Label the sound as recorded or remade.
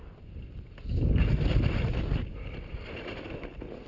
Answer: recorded